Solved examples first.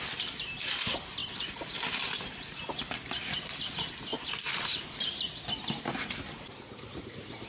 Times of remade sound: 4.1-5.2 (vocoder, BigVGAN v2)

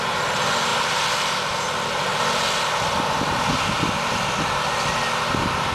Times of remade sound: none

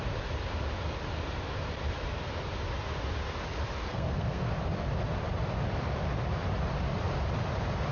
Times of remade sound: 3.9-4.5 (codec, SNAC)